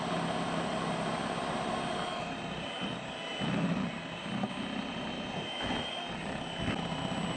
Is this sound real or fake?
real